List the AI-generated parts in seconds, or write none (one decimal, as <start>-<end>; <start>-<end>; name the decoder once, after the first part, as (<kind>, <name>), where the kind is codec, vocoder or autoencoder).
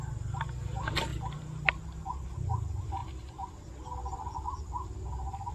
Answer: none